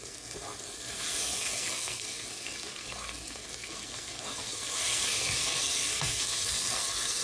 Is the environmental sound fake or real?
fake